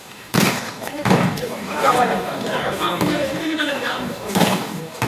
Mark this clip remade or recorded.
remade